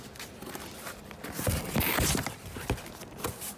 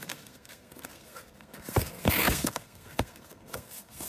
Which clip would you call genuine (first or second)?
first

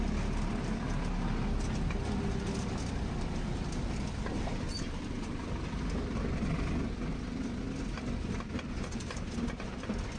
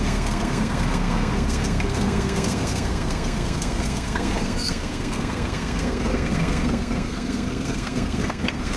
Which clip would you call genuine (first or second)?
first